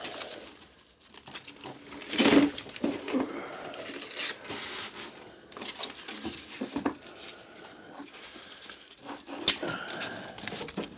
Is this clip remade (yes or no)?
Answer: no